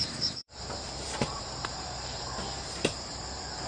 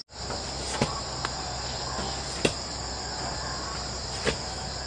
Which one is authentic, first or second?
second